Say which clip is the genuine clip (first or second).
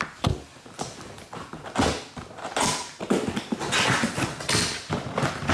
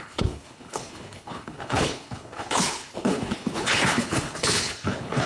first